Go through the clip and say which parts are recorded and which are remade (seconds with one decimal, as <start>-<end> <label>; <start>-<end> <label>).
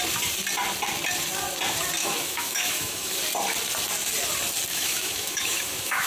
0.0-2.0 recorded; 2.0-3.2 remade; 3.2-4.7 recorded; 4.7-6.1 remade